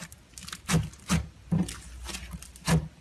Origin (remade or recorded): recorded